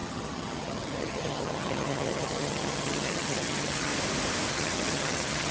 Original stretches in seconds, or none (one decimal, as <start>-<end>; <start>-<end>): 3.9-4.5

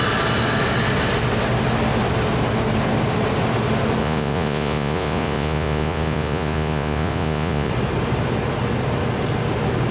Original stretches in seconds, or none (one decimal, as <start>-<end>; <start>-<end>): 0.0-4.0; 7.7-9.9

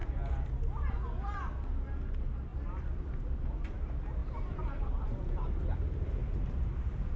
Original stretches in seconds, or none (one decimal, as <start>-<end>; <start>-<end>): 0.5-2.5; 3.4-4.2; 5.6-6.2

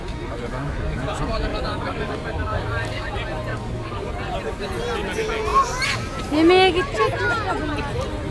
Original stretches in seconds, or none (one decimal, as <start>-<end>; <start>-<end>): 0.0-0.5; 3.1-3.5; 4.1-8.3

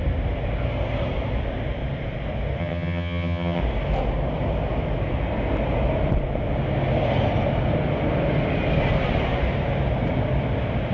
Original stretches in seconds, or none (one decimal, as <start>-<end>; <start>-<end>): 0.0-2.6; 3.6-10.9